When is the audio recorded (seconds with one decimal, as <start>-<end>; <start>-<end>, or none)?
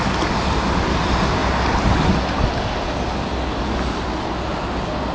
0.0-5.1